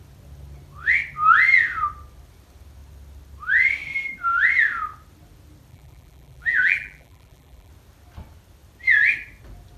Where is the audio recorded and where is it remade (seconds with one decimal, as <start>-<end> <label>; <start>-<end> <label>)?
0.0-5.7 recorded; 5.7-7.7 remade; 7.7-9.8 recorded